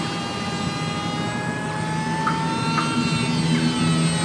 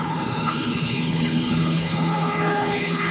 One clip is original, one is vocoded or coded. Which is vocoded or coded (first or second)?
second